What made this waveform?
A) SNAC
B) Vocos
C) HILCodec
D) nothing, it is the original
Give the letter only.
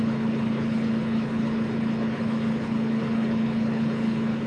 C